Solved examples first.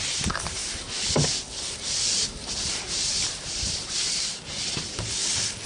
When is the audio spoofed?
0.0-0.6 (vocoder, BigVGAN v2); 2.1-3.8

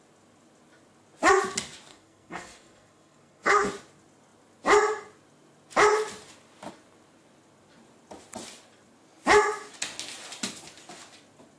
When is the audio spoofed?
1.9-3.7 (codec, SNAC)

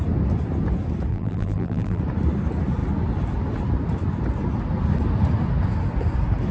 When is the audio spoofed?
1.1-2.0 (vocoder, BigVGAN v2)

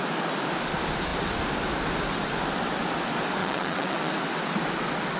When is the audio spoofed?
3.4-4.1 (vocoder, WaveNeXt)

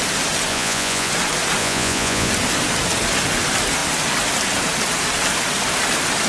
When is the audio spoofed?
0.5-1.1 (vocoder, Vocos); 1.6-2.3

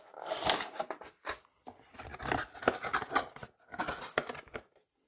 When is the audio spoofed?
none

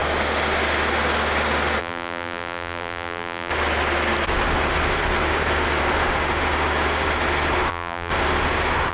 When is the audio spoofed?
1.8-3.5 (vocoder, BigVGAN v2); 7.7-8.1

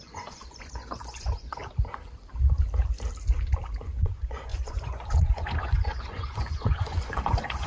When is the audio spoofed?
0.0-1.6 (vocoder, Vocos); 3.8-7.7